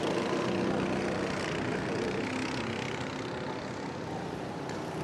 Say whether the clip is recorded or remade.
recorded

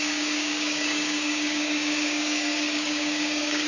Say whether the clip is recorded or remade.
remade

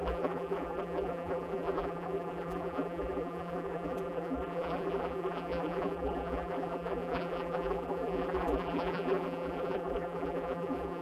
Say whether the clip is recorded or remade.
remade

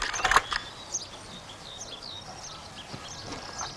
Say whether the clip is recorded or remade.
recorded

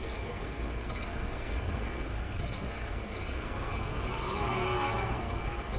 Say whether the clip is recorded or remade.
remade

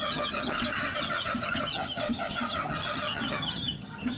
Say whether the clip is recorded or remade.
remade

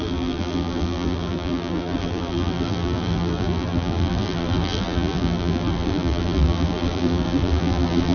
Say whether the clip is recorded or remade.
remade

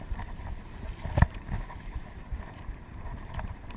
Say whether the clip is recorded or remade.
remade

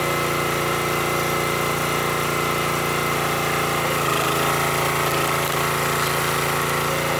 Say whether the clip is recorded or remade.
recorded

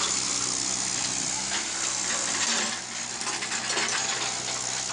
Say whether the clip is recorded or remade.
recorded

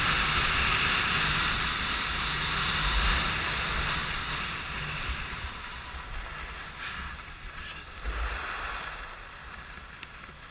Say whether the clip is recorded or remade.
recorded